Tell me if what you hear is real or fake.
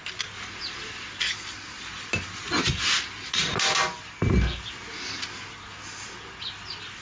real